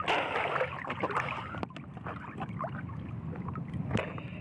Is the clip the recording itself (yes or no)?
yes